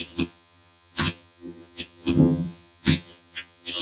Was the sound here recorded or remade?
remade